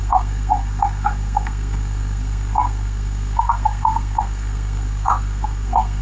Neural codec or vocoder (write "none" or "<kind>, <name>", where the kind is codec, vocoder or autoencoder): codec, SNAC